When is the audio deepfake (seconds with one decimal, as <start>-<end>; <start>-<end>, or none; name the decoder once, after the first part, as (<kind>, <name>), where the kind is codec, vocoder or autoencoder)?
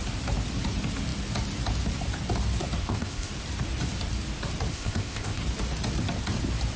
2.8-3.3 (codec, ZipCodec); 4.7-5.4